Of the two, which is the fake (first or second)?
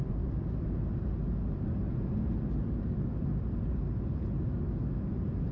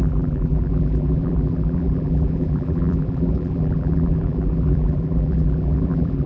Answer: second